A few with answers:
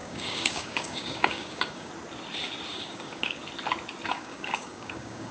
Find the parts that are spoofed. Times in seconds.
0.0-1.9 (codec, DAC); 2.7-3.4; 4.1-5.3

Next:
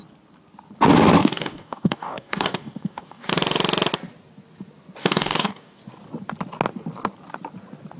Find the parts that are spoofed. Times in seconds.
1.2-3.3 (codec, DAC); 5.0-5.8

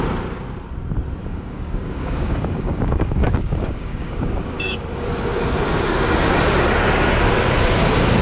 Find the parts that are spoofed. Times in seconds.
1.2-5.1 (codec, DAC)

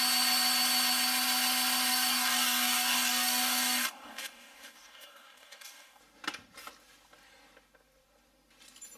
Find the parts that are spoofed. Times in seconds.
1.9-6.0 (codec, DAC)

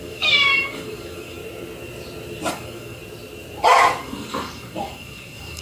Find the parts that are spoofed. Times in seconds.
0.0-1.4 (codec, DAC); 2.5-3.0; 4.0-5.6

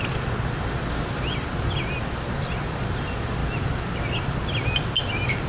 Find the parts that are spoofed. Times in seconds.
none